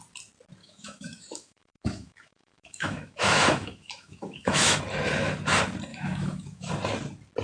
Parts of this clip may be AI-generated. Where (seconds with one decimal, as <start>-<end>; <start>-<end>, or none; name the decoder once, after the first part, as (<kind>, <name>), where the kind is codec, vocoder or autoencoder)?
0.6-4.8 (autoencoder, DAC-VAE); 5.9-6.7